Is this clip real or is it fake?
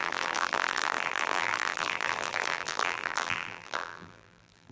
fake